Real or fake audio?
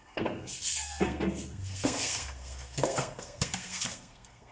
fake